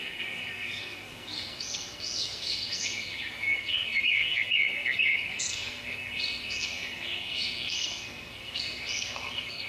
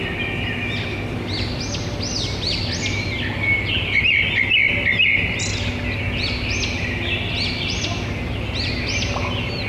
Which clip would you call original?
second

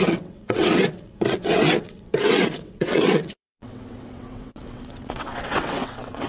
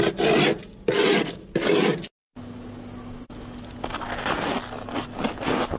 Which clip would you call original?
second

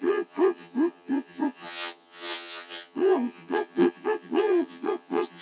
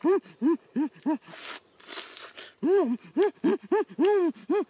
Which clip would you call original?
second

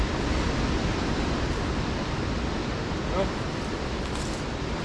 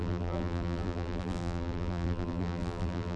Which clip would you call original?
first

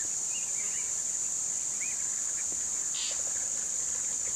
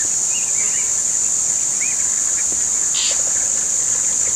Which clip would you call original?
second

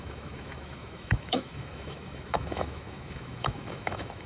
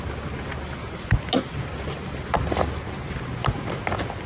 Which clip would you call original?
second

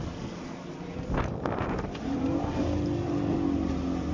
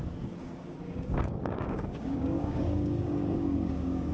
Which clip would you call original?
first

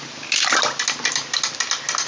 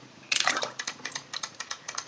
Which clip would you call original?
first